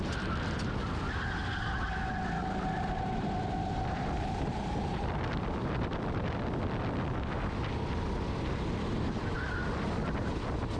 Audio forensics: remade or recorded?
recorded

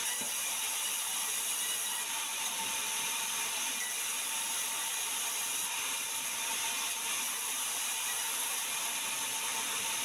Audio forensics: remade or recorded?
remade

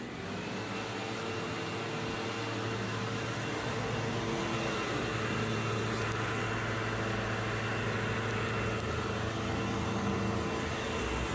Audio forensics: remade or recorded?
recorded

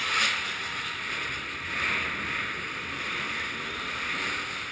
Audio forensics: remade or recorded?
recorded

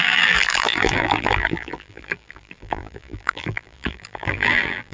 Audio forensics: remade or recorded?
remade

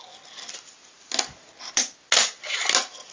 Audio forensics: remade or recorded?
recorded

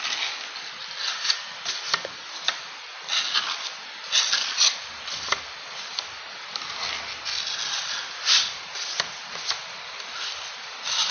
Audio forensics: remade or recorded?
recorded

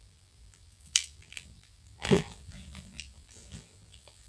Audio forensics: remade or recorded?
remade